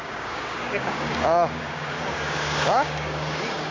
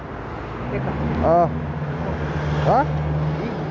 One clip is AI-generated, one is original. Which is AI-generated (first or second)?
first